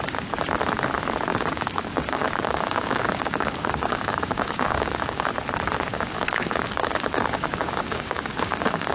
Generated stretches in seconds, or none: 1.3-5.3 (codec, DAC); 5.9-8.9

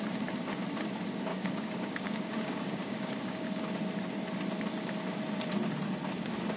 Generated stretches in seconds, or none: 1.3-3.6 (codec, DAC)

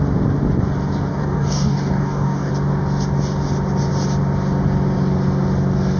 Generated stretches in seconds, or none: 1.1-2.5 (codec, DAC)

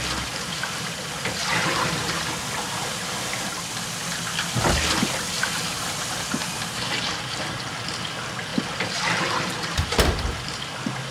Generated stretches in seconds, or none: 1.5-2.2 (vocoder, BigVGAN v2); 6.4-7.7; 8.5-10.6

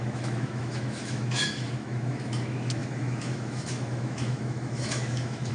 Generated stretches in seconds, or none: 0.0-5.5 (autoencoder, DAC-VAE)

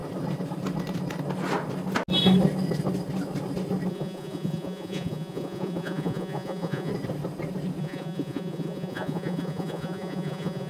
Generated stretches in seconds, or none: 3.9-6.9 (vocoder, Vocos); 7.8-10.7

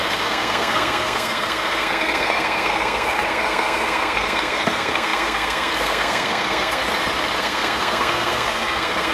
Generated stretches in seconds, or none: 0.0-6.8 (codec, SNAC); 7.4-9.1

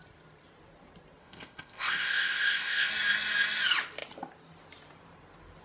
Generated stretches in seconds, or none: 1.2-2.9 (codec, ZipCodec)